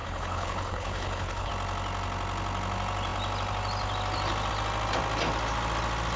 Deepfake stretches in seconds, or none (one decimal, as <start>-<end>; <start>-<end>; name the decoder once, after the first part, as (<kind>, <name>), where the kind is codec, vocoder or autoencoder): 0.0-1.5 (codec, HILCodec)